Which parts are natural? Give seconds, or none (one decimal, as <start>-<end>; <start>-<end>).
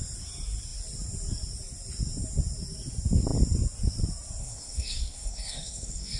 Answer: 0.0-4.4